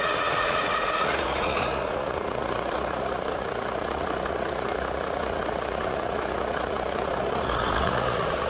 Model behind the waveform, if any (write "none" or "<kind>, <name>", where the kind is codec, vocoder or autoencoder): vocoder, Vocos